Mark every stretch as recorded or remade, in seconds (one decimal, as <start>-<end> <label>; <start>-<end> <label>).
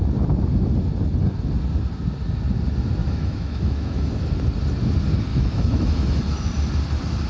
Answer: 0.0-3.0 recorded; 3.0-4.3 remade; 4.3-5.3 recorded; 5.3-6.5 remade; 6.5-7.3 recorded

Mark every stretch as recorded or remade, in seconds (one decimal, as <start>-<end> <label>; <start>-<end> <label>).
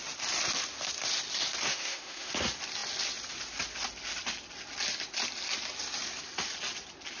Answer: 0.0-1.7 recorded; 1.7-2.3 remade; 2.3-7.2 recorded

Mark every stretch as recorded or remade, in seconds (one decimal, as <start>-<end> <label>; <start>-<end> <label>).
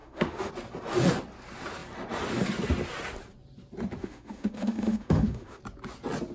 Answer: 0.0-0.5 remade; 0.5-4.0 recorded; 4.0-5.6 remade; 5.6-6.3 recorded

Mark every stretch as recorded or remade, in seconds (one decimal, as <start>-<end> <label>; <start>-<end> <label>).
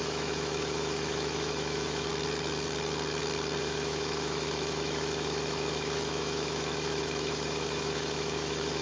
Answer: 0.0-2.1 remade; 2.1-3.6 recorded; 3.6-8.8 remade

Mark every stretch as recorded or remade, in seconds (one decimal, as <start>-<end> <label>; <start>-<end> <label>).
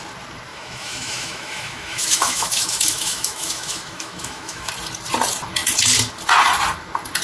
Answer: 0.0-0.5 recorded; 0.5-4.7 remade; 4.7-7.2 recorded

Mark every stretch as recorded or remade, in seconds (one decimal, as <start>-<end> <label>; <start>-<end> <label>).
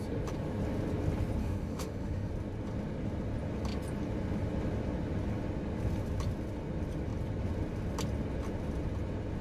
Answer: 0.0-1.4 recorded; 1.4-2.3 remade; 2.3-9.4 recorded